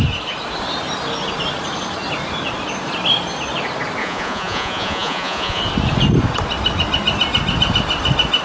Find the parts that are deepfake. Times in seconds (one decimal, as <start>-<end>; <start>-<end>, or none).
4.0-5.6